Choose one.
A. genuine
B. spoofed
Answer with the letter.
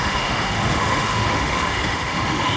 B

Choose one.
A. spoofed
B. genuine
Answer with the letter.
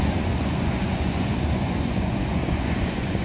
A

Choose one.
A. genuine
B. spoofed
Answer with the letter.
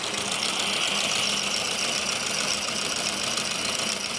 A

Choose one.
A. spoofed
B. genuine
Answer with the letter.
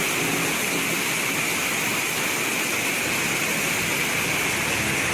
B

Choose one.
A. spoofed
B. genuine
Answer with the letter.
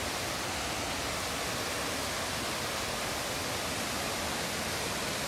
B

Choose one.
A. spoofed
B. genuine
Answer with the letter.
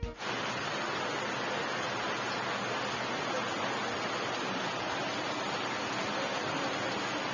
B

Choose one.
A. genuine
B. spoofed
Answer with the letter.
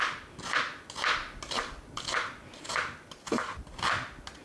A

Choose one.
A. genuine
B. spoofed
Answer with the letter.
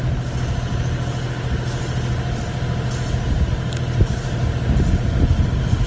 A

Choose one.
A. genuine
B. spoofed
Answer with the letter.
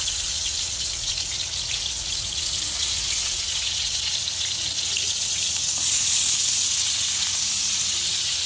B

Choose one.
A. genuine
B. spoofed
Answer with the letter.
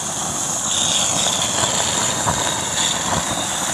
A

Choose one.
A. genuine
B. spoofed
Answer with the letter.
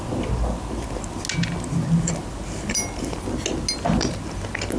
A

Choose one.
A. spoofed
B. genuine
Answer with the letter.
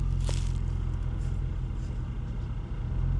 B